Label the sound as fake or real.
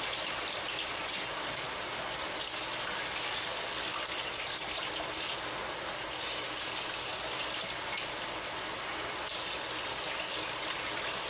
real